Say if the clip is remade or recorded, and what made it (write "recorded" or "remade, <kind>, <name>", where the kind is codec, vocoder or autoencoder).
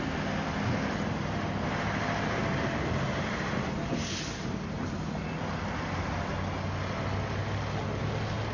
recorded